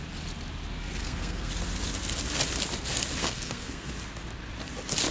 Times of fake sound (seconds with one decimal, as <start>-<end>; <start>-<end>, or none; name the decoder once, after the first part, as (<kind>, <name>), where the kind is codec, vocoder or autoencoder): 1.0-1.5 (codec, SNAC); 3.2-3.9